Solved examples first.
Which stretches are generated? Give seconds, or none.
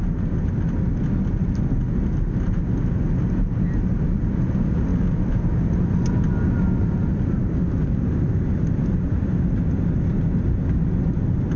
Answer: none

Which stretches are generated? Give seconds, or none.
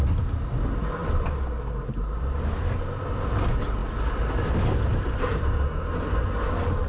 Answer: none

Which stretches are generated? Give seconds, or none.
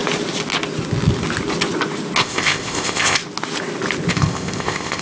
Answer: 2.2-3.2 (codec, ZipCodec); 4.1-5.0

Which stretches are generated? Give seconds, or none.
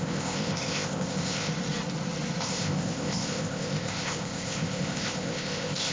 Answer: 0.0-1.5 (codec, ZipCodec); 2.4-5.9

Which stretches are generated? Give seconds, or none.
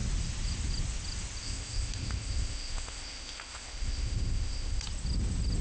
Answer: 1.4-4.8 (codec, ZipCodec)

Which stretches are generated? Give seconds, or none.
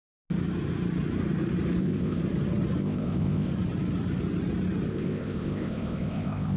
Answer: 1.8-2.2 (codec, ZipCodec); 2.8-3.5; 4.9-6.6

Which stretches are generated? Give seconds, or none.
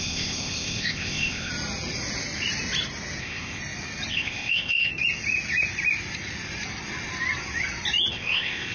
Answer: 0.0-1.5 (codec, ZipCodec); 3.2-3.6; 4.1-4.9; 8.1-8.7